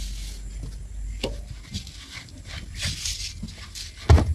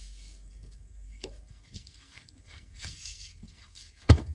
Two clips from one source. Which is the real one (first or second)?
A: first